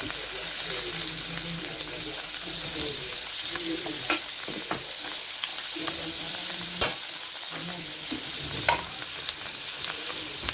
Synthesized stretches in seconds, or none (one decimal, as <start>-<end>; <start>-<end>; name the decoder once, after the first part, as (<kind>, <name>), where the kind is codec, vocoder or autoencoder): 1.6-4.0 (vocoder, BigVGAN v2); 5.5-7.0